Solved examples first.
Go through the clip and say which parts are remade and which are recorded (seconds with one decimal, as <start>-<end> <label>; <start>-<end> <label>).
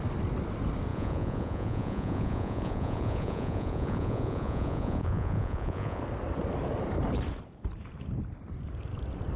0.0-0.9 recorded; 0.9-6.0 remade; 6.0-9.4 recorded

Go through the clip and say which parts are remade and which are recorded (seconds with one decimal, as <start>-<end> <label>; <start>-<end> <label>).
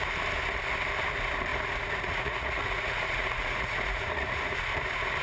0.0-1.5 recorded; 1.5-4.6 remade; 4.6-5.2 recorded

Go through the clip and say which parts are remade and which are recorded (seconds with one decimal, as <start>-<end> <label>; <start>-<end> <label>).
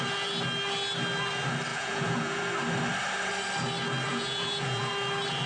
0.0-1.7 recorded; 1.7-2.4 remade; 2.4-4.1 recorded; 4.1-4.9 remade; 4.9-5.5 recorded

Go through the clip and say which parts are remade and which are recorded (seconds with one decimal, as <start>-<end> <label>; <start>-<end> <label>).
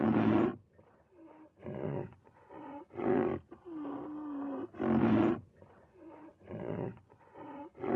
0.0-0.5 remade; 0.5-1.6 recorded; 1.6-3.3 remade; 3.3-5.1 recorded; 5.1-8.0 remade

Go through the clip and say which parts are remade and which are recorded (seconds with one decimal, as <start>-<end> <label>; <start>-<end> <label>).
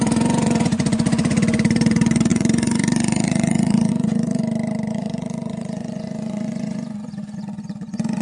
0.0-4.4 remade; 4.4-4.9 recorded; 4.9-8.2 remade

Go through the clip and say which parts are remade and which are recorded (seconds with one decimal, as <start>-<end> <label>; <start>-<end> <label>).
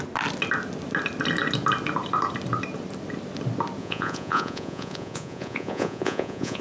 0.0-3.8 recorded; 3.8-6.6 remade